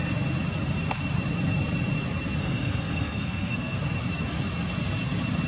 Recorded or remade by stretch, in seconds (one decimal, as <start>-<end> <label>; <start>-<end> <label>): 0.0-2.4 recorded; 2.4-3.8 remade; 3.8-5.5 recorded

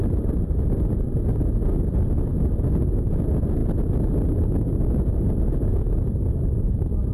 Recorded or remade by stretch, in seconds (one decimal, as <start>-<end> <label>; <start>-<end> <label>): 0.0-7.1 recorded

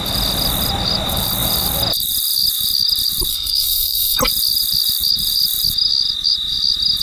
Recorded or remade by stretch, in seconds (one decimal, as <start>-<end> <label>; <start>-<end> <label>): 0.0-3.3 recorded; 3.3-4.2 remade; 4.2-7.0 recorded

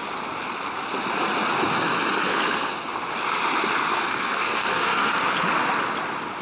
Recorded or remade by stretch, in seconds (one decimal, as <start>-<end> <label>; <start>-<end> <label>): 0.0-2.3 recorded; 2.3-2.9 remade; 2.9-3.9 recorded; 3.9-5.1 remade; 5.1-6.4 recorded

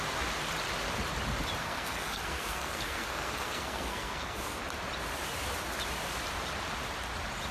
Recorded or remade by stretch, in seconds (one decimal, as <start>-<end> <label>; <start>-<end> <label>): 0.0-1.6 recorded; 1.6-4.6 remade; 4.6-7.5 recorded